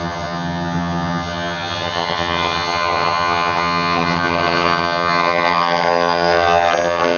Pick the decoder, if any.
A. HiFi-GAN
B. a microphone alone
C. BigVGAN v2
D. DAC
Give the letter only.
A